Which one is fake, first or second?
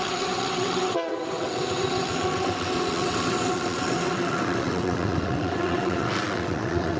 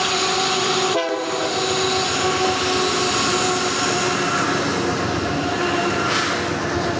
first